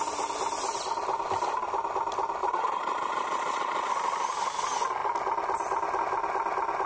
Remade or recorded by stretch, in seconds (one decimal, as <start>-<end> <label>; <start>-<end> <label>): 0.0-2.4 recorded; 2.4-3.9 remade; 3.9-6.9 recorded